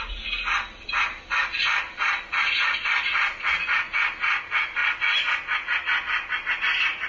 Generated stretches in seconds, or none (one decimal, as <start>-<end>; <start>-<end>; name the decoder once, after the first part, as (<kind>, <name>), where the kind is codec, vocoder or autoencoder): none